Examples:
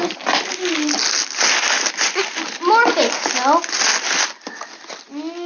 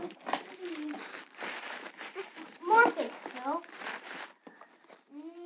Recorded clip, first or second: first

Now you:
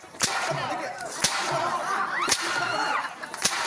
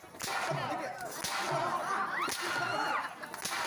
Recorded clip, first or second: second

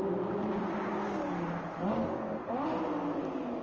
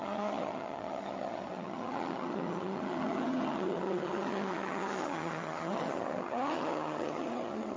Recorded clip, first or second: first